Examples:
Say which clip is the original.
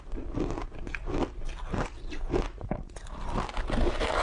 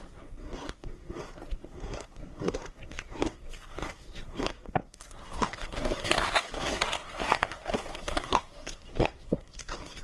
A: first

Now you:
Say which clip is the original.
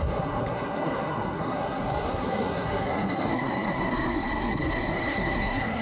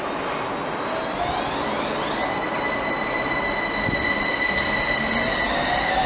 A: second